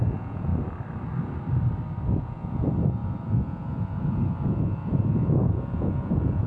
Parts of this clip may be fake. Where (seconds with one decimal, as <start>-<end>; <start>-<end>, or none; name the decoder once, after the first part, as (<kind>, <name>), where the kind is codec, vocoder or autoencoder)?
0.0-0.5 (vocoder, Vocos); 2.2-6.5